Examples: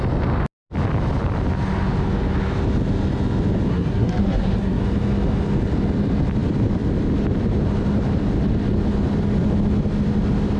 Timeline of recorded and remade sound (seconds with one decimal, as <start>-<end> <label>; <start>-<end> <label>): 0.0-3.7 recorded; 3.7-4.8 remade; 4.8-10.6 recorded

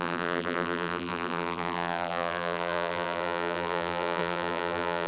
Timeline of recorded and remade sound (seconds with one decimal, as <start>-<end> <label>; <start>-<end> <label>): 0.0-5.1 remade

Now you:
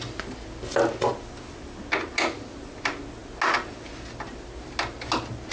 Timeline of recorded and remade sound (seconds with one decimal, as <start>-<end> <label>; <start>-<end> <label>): 0.0-5.5 recorded

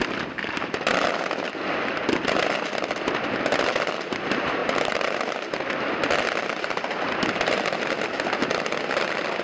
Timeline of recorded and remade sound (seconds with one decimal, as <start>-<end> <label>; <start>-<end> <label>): 0.0-9.4 recorded

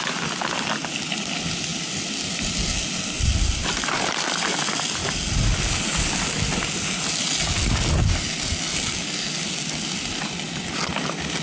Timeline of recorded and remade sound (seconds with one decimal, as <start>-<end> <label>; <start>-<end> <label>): 0.0-11.4 recorded

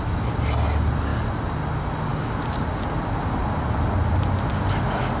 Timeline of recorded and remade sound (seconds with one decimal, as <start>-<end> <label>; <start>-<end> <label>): 0.0-5.2 recorded

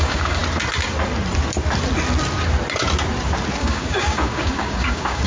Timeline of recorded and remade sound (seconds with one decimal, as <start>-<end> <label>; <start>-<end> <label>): 0.0-0.4 remade; 0.4-3.6 recorded; 3.6-5.3 remade

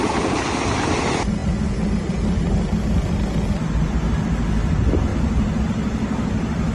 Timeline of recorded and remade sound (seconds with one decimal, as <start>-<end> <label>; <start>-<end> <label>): 0.0-6.7 recorded